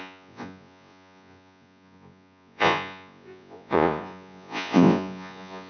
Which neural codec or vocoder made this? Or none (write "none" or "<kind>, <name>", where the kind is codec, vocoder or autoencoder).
vocoder, Vocos